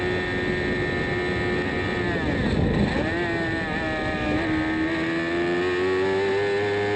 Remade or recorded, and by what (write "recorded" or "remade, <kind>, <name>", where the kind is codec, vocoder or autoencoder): recorded